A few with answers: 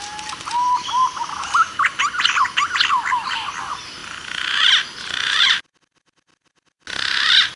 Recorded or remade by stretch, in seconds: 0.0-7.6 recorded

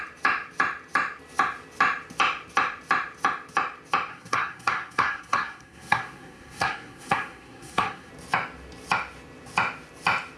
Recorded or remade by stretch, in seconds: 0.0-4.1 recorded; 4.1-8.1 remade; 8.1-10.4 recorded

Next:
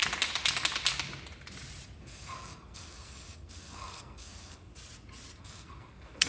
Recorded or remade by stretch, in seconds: 0.0-2.0 recorded; 2.0-4.7 remade; 4.7-5.4 recorded; 5.4-6.3 remade

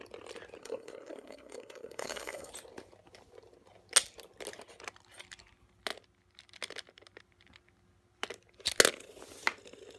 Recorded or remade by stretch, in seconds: 0.0-0.6 recorded; 0.6-2.5 remade; 2.5-10.0 recorded

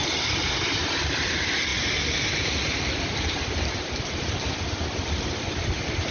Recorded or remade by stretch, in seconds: 0.0-6.1 recorded

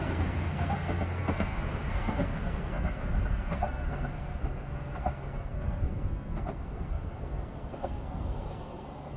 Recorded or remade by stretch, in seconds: 0.0-9.2 remade

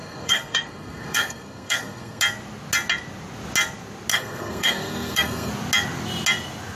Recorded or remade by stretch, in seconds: 0.0-2.2 remade; 2.2-4.1 recorded; 4.1-5.5 remade; 5.5-6.8 recorded